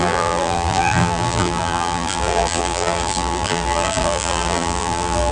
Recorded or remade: remade